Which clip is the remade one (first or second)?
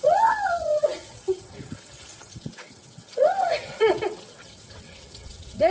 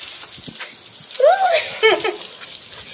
first